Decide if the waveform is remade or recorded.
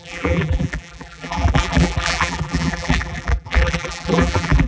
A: remade